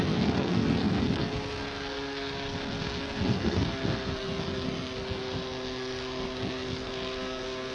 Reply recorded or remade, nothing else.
remade